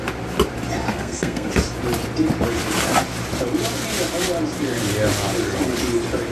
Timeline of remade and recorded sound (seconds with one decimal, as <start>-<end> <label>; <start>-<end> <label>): 0.0-0.9 recorded; 0.9-1.5 remade; 1.5-6.3 recorded